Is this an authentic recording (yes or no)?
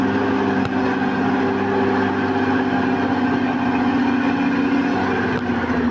yes